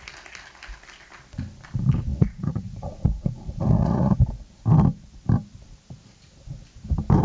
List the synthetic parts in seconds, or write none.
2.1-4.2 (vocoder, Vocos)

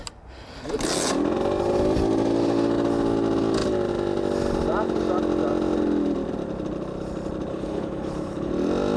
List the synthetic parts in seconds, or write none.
7.5-8.5 (codec, HILCodec)